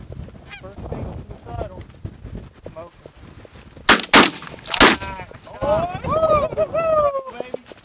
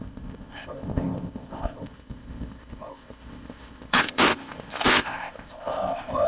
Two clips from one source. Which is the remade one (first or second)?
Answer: second